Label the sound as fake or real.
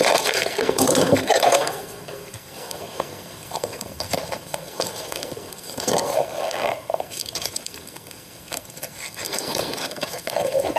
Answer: fake